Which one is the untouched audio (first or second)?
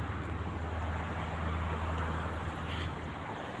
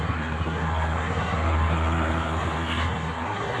first